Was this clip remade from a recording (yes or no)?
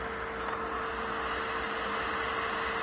no